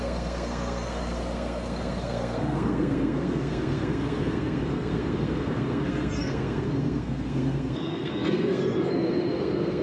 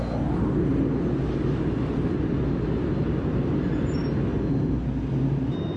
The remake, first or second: first